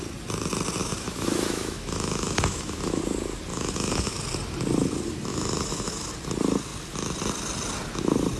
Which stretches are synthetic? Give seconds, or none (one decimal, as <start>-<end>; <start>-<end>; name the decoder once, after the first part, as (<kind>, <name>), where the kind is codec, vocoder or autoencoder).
0.8-3.0 (autoencoder, DAC-VAE); 3.5-4.2; 5.3-6.1